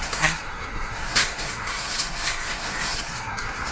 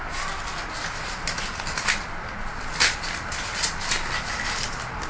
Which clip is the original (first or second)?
second